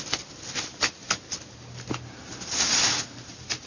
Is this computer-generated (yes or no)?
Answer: no